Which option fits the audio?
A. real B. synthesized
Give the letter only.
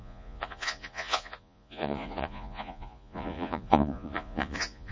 B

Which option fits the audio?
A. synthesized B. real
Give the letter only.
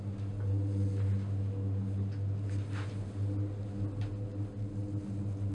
B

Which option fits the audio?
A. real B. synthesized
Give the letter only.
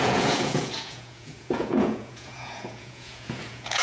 B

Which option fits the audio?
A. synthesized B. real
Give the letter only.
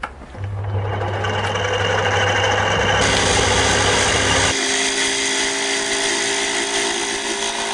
B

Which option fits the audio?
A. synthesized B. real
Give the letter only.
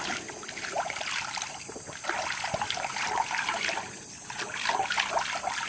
B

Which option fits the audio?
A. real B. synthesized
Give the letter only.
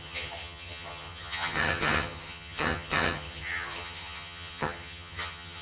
B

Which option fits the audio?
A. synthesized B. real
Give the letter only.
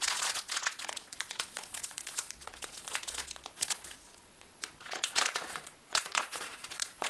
A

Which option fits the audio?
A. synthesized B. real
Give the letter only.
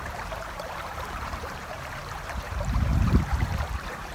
A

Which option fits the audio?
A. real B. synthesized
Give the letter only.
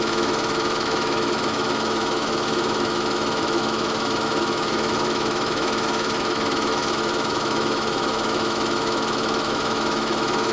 B